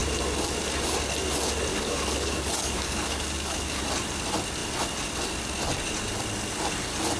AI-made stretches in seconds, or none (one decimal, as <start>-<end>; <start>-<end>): 1.7-3.8